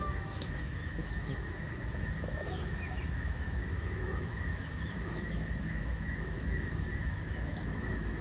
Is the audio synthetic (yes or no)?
yes